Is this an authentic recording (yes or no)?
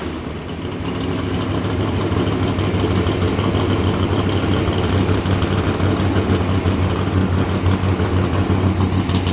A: yes